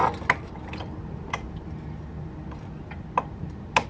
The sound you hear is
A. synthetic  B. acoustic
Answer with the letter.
B